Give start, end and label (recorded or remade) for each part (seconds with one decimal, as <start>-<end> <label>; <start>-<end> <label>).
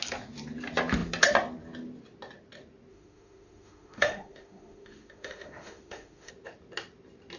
0.0-2.9 recorded; 2.9-6.3 remade; 6.3-7.4 recorded